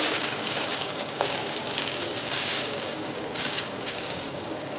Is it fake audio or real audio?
fake